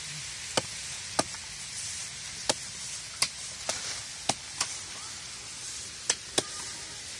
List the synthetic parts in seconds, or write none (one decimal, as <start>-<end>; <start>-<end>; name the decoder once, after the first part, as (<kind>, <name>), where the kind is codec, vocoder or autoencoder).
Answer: none